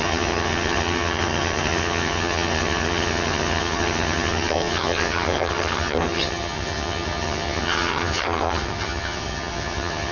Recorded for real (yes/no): no